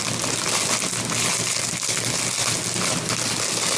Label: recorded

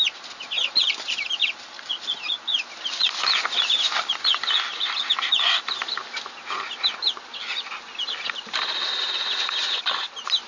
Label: recorded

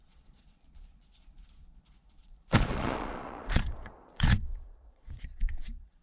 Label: remade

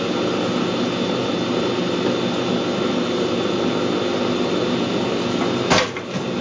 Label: recorded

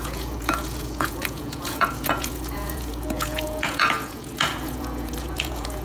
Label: remade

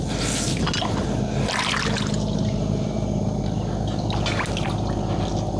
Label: recorded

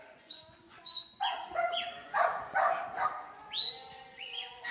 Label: remade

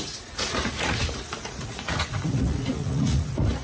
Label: remade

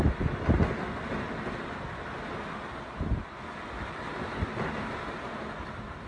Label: recorded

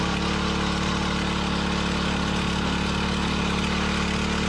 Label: recorded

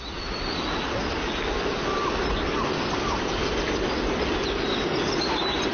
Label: recorded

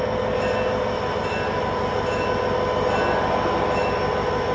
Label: recorded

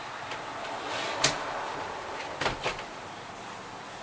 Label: recorded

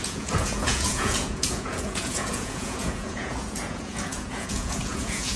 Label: remade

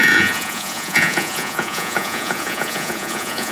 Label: remade